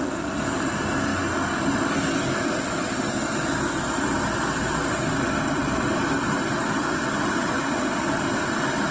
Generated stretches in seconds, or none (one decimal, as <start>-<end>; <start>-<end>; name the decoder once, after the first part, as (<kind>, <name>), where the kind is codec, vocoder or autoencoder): none